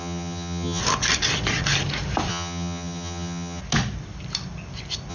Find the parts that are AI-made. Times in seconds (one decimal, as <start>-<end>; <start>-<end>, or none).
0.0-0.8; 2.3-3.6